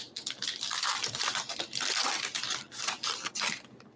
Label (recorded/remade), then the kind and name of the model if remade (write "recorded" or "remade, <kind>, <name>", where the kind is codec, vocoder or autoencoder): remade, vocoder, BigVGAN v2